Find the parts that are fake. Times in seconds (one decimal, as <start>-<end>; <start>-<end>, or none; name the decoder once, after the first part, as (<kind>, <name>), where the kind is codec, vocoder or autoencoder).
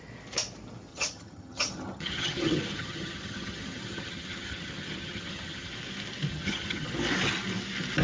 0.9-5.7 (vocoder, HiFi-GAN); 6.3-6.9